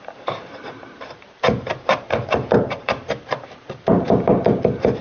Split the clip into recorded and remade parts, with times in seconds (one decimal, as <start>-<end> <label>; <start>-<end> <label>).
0.0-5.0 remade